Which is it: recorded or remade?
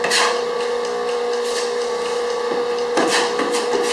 recorded